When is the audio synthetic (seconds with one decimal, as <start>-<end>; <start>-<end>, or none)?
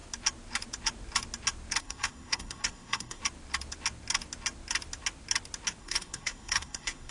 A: 1.8-3.2; 5.8-7.1